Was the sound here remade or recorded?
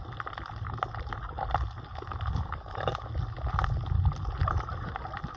recorded